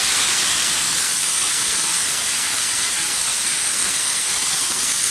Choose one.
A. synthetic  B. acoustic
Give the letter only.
A